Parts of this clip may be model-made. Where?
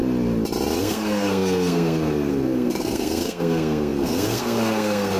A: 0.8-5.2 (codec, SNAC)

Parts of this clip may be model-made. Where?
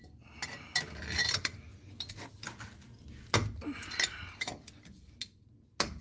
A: none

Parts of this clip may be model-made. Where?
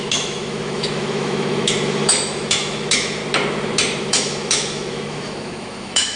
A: 0.0-3.2 (autoencoder, DAC-VAE); 4.0-6.2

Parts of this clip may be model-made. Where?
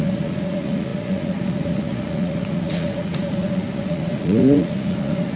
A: 0.0-5.4 (vocoder, Vocos)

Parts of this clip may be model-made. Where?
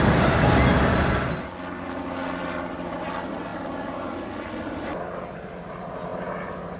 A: none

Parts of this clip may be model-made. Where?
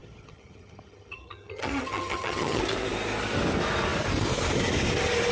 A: 0.0-2.6 (vocoder, HiFi-GAN)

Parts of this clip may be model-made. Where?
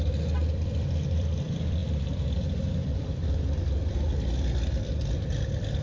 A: 0.0-5.8 (vocoder, BigVGAN v2)